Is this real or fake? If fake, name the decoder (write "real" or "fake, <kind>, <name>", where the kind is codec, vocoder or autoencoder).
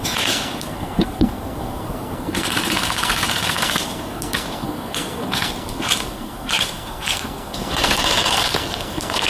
fake, codec, SNAC